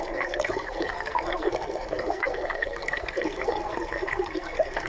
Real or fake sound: fake